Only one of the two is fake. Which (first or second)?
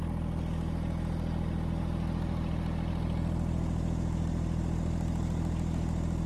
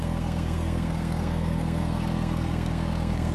second